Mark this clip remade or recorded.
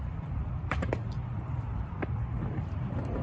remade